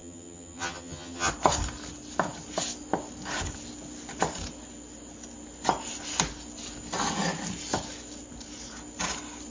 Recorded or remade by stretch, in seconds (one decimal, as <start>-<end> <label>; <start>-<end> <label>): 0.0-1.3 remade; 1.3-9.5 recorded